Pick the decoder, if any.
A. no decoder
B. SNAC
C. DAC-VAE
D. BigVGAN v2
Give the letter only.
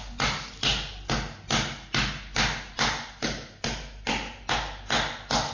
A